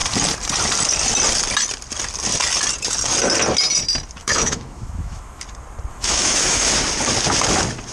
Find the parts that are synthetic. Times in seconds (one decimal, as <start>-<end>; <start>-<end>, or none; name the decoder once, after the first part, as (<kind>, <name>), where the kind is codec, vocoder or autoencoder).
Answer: 4.2-5.4 (autoencoder, DAC-VAE); 5.9-6.7